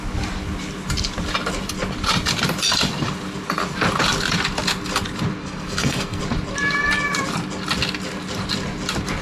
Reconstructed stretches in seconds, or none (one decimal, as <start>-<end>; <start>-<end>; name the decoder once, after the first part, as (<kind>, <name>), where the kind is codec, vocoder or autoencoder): 5.4-6.2 (codec, SNAC)